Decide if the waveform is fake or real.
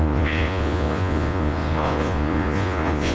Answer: fake